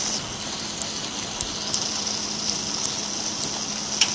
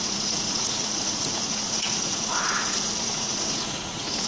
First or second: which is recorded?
first